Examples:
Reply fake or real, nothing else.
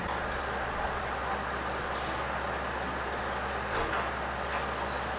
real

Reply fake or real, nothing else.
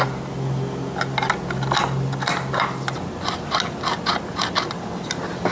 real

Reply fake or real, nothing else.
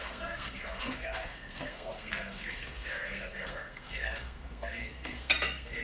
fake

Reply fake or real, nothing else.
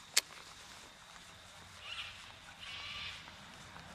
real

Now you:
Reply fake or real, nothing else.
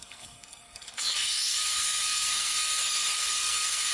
fake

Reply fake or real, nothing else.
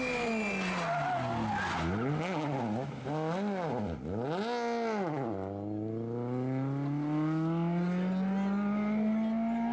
real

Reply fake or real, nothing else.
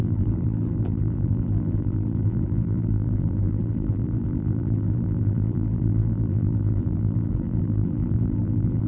fake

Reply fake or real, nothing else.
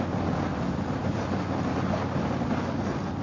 real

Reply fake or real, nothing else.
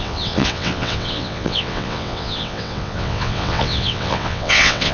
fake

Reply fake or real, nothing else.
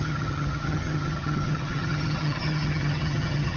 fake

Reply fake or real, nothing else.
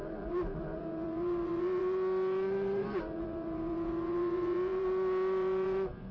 fake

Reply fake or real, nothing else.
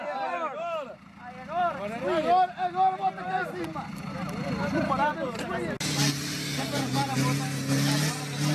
real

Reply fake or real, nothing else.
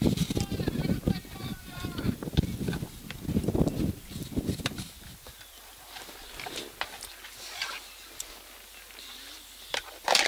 real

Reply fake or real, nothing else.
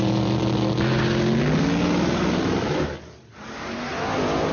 real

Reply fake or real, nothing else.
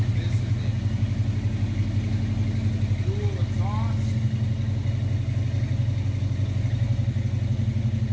real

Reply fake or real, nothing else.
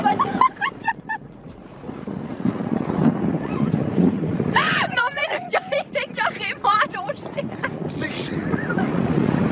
fake